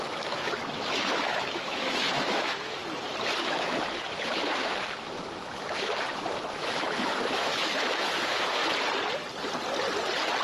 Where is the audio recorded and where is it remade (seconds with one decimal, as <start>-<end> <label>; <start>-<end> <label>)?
0.0-2.8 remade; 2.8-3.4 recorded; 3.4-8.6 remade; 8.6-10.4 recorded